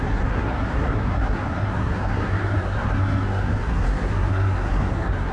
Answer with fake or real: fake